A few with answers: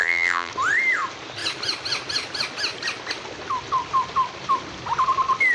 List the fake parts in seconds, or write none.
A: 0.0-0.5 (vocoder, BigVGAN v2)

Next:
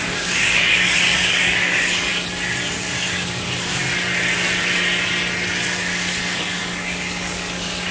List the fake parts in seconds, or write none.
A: 0.0-2.1 (codec, DAC); 2.7-3.8; 6.0-7.9

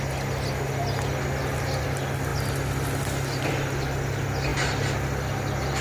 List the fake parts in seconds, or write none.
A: 2.3-3.4 (vocoder, BigVGAN v2); 4.5-5.8

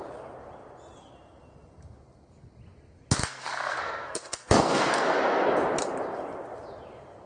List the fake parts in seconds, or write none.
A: 3.2-5.5 (codec, SNAC)